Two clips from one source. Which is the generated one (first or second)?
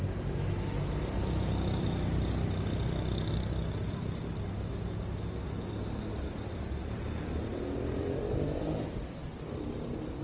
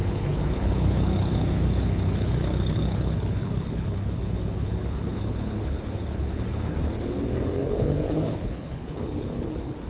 second